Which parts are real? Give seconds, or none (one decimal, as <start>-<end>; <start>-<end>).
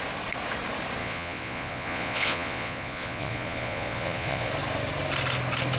0.0-1.0; 4.5-5.8